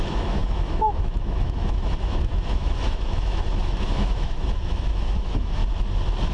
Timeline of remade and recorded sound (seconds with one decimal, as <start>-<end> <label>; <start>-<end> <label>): 0.0-5.6 remade; 5.6-6.3 recorded